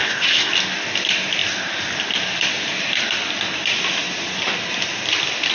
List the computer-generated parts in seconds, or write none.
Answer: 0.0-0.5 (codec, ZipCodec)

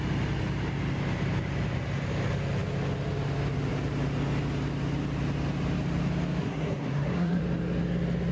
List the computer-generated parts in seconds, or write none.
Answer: 6.4-7.4 (codec, SNAC)

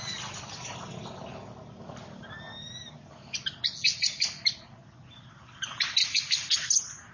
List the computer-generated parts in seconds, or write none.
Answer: none

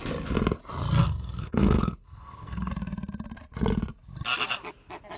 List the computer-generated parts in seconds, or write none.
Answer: 1.0-2.7 (codec, SNAC)

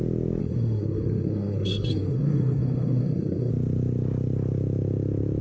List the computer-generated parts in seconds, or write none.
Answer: 0.4-3.5 (codec, SNAC)

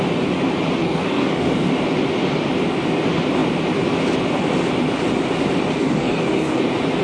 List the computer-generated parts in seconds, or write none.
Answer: 0.8-1.7 (codec, DAC); 5.8-6.6

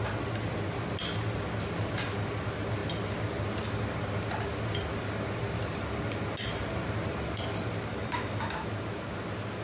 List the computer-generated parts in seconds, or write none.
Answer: 7.9-8.7 (autoencoder, DAC-VAE)

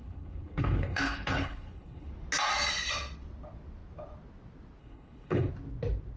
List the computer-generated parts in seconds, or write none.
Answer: 0.0-2.1 (codec, HILCodec); 4.8-5.5